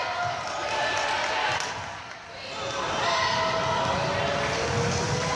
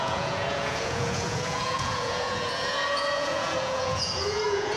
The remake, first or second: second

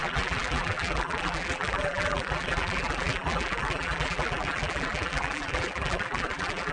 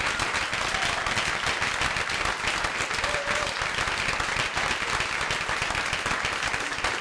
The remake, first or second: first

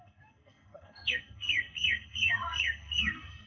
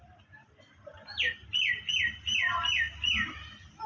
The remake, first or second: first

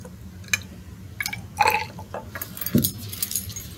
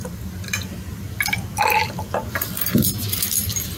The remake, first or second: second